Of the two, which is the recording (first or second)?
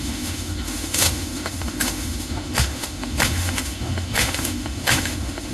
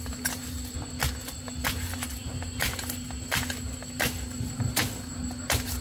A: second